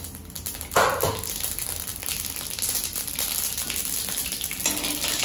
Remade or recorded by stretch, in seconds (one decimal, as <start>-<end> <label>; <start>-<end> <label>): 0.0-5.2 recorded

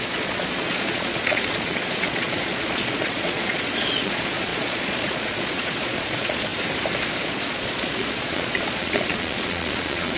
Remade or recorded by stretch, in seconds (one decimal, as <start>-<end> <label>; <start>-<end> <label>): 0.0-6.5 remade; 6.5-7.2 recorded; 7.2-10.2 remade